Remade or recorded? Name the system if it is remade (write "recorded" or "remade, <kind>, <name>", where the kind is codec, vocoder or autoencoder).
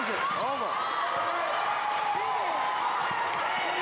recorded